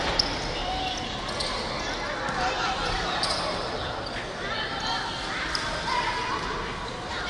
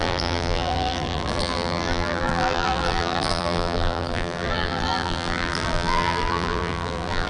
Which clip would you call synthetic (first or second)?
second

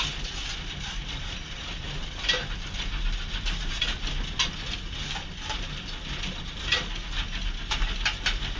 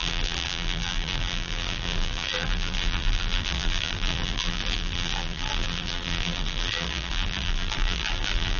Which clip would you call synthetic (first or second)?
second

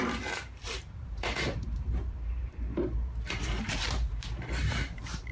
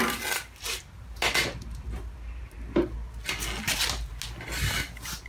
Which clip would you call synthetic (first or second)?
first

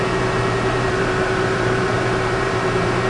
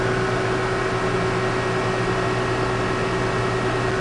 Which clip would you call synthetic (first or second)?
first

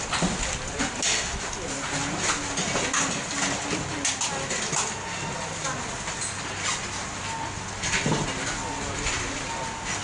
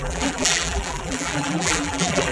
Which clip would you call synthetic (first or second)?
second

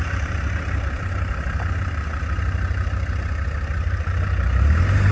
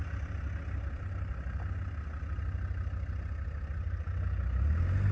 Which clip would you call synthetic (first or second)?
first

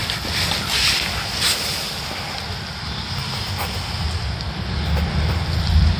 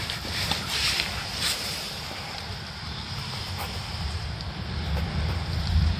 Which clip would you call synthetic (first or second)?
second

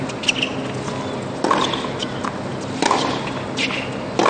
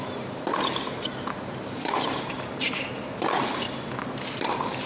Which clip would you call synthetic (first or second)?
second